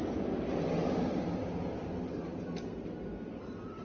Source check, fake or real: real